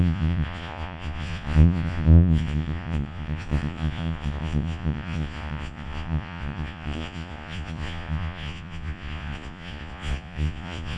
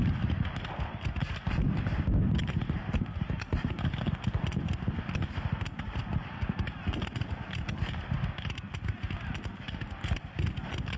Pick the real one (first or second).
second